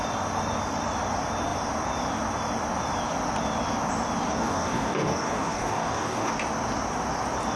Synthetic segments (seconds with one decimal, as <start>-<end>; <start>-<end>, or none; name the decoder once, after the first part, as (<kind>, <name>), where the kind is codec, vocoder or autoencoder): 4.3-6.3 (codec, DAC)